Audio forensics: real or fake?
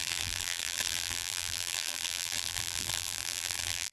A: fake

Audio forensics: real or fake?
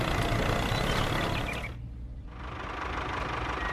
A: real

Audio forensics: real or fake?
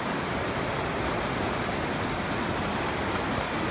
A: real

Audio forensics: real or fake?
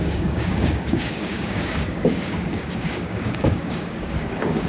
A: fake